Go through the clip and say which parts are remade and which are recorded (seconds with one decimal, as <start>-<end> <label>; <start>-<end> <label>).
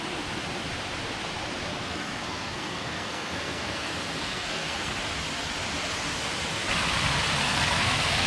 0.0-1.7 recorded; 1.7-5.0 remade; 5.0-7.4 recorded; 7.4-8.3 remade